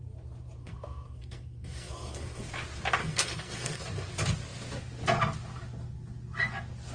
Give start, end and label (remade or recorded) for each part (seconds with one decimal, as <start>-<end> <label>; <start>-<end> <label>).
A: 0.0-0.6 recorded; 0.6-2.4 remade; 2.4-3.0 recorded; 3.0-3.8 remade; 3.8-6.9 recorded